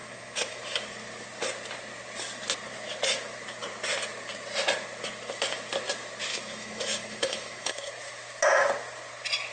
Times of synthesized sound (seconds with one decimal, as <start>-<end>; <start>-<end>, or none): 0.0-0.6; 6.3-7.9